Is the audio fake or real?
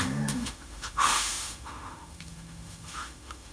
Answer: fake